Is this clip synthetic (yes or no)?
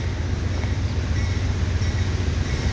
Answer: no